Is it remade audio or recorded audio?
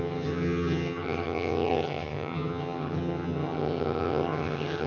remade